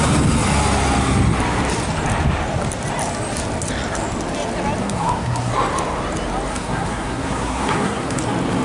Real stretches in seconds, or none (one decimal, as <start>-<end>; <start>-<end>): 0.0-4.8; 5.5-6.5; 8.2-8.6